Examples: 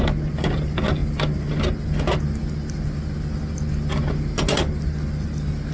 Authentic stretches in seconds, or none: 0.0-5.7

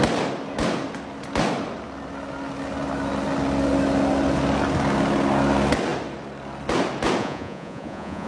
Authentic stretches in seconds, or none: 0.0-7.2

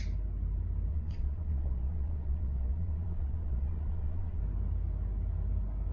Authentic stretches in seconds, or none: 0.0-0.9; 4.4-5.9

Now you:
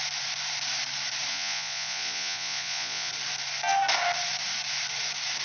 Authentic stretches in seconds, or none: 0.0-1.3; 3.1-5.4